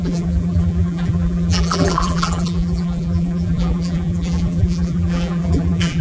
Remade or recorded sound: remade